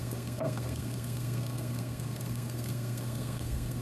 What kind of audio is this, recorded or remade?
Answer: remade